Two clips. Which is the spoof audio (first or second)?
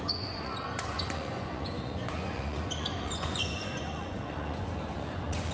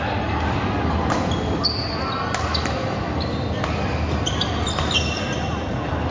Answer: first